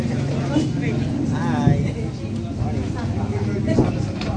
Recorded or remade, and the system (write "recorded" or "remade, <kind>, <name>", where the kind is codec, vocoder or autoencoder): recorded